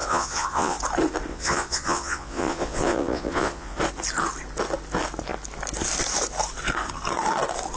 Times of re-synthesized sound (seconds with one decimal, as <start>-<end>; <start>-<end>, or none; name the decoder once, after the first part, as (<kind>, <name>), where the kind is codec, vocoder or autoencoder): 0.0-0.8 (vocoder, Vocos); 1.3-3.8